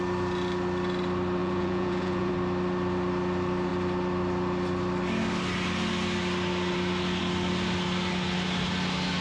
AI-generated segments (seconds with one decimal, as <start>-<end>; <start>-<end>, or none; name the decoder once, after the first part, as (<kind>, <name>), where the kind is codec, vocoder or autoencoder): 1.4-2.3 (vocoder, Vocos)